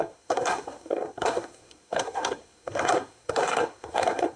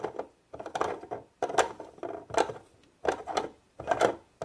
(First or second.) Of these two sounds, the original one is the second